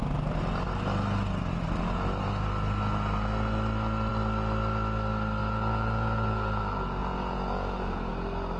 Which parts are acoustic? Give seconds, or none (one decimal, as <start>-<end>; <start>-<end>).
0.0-5.4; 6.6-7.0; 8.1-8.6